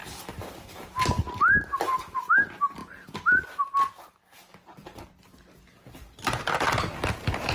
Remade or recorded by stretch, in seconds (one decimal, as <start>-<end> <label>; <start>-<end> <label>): 0.0-7.5 recorded